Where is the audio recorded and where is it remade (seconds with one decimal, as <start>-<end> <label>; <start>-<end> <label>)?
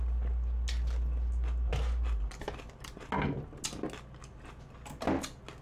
0.0-5.6 recorded